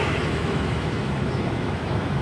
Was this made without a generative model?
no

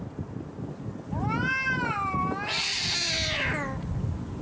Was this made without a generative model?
yes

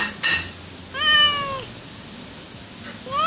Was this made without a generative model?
yes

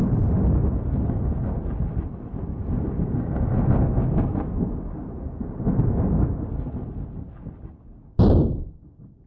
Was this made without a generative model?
yes